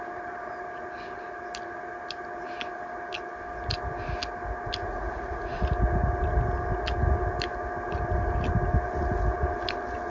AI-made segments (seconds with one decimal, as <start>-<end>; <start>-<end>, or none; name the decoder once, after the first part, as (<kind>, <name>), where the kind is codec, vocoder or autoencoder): 4.8-5.6 (vocoder, Vocos)